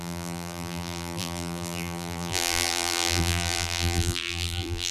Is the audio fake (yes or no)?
yes